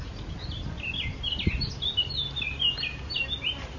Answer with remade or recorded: recorded